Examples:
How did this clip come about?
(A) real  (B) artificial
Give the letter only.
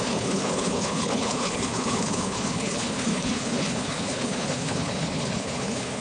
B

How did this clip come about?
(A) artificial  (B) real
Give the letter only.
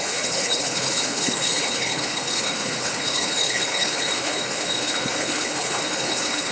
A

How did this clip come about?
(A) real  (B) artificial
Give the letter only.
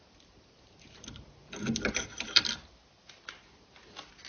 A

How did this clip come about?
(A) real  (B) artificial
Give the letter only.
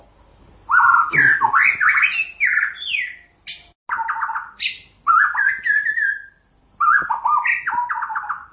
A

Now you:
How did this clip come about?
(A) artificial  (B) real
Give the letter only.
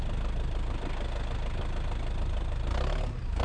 B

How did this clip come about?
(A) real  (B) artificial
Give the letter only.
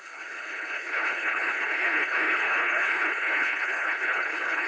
B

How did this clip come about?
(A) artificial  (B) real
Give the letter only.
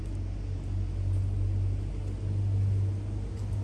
B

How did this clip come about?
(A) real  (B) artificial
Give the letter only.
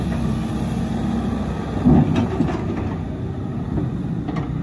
A